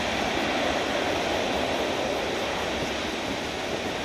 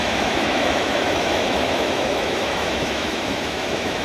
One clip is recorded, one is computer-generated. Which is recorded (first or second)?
first